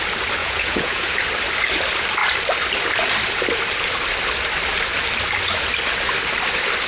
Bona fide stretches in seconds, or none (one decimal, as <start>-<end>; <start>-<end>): 0.0-0.4; 1.1-6.9

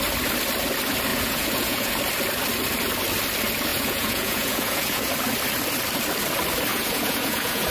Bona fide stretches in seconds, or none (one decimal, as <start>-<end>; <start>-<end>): 0.0-1.1; 1.9-3.7; 5.1-6.7

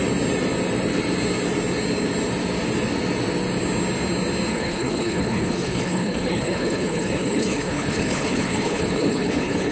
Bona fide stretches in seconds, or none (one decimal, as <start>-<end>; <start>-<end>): 0.0-4.5